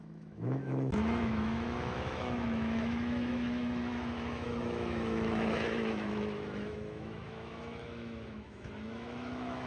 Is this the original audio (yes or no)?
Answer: no